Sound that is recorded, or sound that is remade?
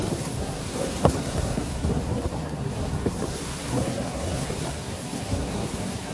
remade